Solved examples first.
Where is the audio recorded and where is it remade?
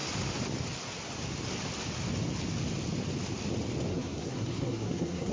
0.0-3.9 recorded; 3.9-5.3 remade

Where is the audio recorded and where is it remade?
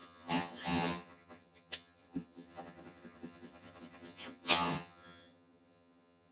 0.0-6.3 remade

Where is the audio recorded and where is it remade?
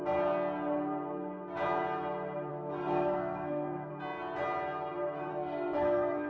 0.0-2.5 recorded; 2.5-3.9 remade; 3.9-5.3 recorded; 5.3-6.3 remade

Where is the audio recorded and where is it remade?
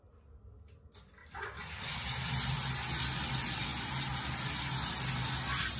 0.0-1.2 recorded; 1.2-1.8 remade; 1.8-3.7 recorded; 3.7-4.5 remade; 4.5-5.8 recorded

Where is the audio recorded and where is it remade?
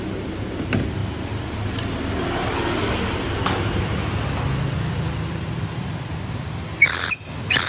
0.0-7.7 recorded